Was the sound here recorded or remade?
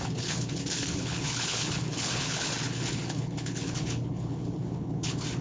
remade